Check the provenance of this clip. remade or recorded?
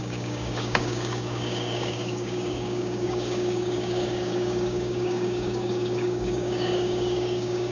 remade